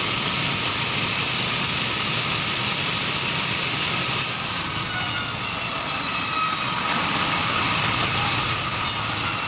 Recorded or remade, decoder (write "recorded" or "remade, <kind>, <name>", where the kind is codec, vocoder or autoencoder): recorded